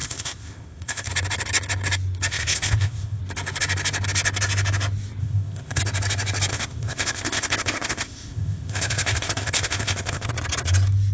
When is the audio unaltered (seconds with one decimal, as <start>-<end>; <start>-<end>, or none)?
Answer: 1.1-2.3; 3.2-5.2; 5.8-6.5; 10.3-11.1